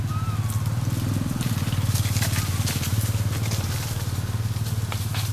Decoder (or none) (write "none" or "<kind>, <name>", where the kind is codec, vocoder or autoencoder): none